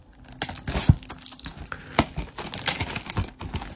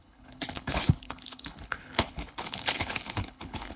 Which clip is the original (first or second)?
first